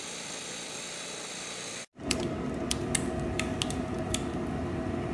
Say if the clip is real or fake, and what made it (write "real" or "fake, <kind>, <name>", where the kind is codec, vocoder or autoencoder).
real